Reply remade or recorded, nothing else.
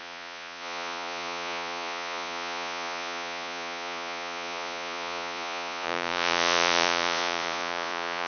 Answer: remade